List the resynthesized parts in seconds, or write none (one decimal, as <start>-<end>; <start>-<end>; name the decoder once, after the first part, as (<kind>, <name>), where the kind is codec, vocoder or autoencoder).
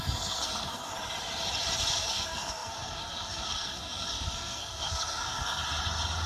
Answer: 0.0-0.9 (codec, SNAC); 1.9-5.6